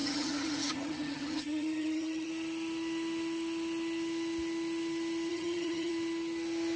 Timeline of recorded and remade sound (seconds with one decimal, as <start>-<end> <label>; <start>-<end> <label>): 0.0-2.3 remade; 2.3-5.3 recorded; 5.3-5.9 remade; 5.9-6.8 recorded